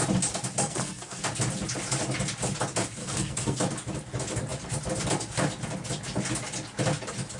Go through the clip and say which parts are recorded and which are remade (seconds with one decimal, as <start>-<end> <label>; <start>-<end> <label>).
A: 0.0-0.6 recorded; 0.6-1.2 remade; 1.2-3.0 recorded; 3.0-3.6 remade; 3.6-7.4 recorded

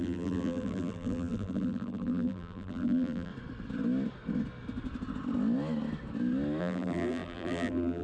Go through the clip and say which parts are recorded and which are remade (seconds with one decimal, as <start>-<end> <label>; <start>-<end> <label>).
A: 0.0-3.3 remade; 3.3-6.6 recorded; 6.6-8.0 remade

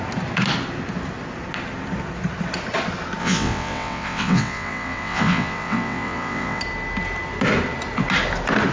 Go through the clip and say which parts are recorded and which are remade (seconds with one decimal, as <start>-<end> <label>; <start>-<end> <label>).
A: 0.0-3.2 recorded; 3.2-6.6 remade; 6.6-8.7 recorded

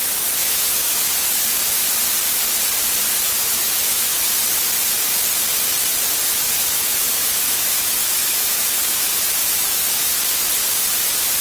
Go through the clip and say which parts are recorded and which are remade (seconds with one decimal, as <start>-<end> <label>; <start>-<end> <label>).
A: 0.0-1.0 remade; 1.0-3.4 recorded; 3.4-4.1 remade; 4.1-6.5 recorded; 6.5-10.1 remade; 10.1-11.4 recorded

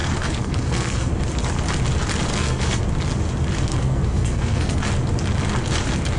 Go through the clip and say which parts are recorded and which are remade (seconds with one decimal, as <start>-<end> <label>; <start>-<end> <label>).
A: 0.0-1.1 remade; 1.1-2.3 recorded; 2.3-2.8 remade; 2.8-3.7 recorded; 3.7-4.8 remade; 4.8-6.2 recorded